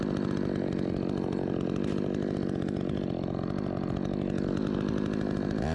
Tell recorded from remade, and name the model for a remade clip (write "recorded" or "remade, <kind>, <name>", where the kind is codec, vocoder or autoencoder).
recorded